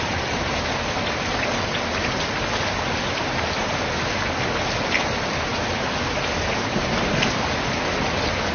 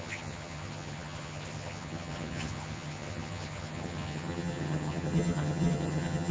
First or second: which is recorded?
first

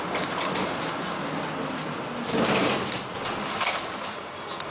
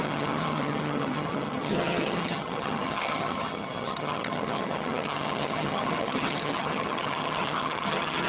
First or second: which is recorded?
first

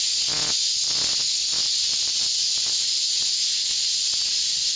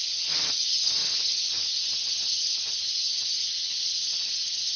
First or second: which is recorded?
first